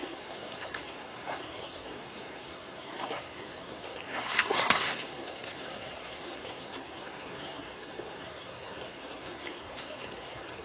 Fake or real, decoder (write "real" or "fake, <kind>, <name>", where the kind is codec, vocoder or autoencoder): fake, codec, SNAC